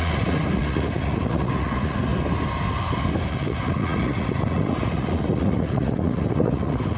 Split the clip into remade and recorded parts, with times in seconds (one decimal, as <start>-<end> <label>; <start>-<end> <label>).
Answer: 0.0-2.1 remade; 2.1-3.3 recorded; 3.3-7.0 remade